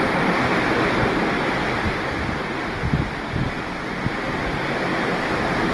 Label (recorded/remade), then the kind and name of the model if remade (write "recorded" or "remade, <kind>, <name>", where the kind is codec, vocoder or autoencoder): recorded